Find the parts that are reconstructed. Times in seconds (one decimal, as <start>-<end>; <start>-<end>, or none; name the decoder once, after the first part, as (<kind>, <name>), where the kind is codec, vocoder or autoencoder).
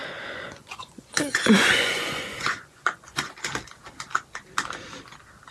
0.0-3.3 (vocoder, Vocos)